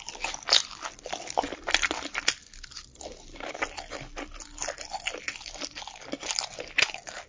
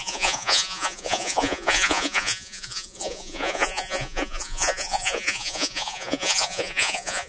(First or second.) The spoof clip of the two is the second